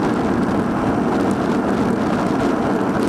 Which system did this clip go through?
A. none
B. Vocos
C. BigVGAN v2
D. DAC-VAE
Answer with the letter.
A